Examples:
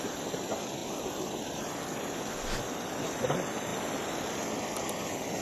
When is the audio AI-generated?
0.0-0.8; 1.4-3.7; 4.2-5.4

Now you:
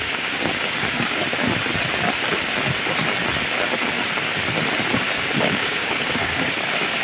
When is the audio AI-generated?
0.0-1.2; 5.4-7.0